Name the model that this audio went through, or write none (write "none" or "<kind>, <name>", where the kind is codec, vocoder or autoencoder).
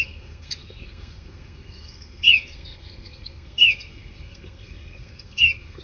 codec, SNAC